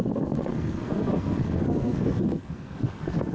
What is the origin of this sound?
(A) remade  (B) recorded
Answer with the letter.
A